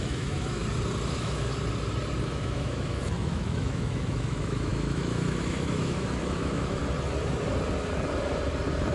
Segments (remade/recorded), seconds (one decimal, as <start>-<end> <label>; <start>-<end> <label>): 0.0-0.6 remade; 0.6-1.1 recorded; 1.1-1.5 remade; 1.5-2.2 recorded; 2.2-6.8 remade; 6.8-8.9 recorded